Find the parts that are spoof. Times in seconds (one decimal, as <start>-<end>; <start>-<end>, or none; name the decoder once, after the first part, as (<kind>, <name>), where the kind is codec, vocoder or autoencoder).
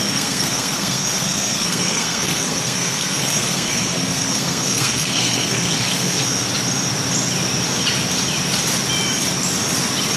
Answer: 0.0-6.5 (codec, SNAC)